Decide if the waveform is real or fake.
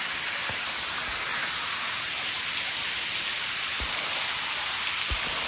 real